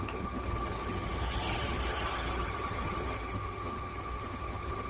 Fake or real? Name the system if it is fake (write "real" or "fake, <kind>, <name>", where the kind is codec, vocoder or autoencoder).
fake, vocoder, HiFi-GAN